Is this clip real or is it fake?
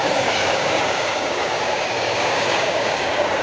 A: fake